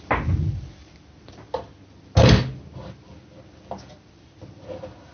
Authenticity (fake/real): real